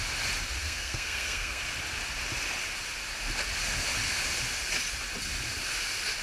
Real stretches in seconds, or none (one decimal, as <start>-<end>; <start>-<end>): 0.0-0.6; 1.6-6.2